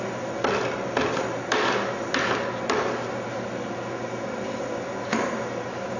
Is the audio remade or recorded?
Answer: recorded